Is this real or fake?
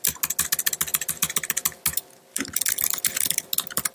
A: real